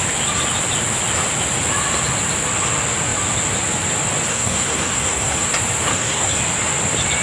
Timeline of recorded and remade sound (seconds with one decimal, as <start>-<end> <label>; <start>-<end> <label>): 0.0-4.3 recorded; 4.3-5.5 remade; 5.5-5.9 recorded; 5.9-6.4 remade; 6.4-7.2 recorded